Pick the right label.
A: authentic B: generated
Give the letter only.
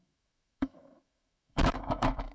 B